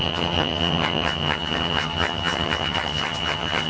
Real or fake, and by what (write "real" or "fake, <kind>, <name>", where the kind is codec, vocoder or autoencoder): fake, vocoder, HiFi-GAN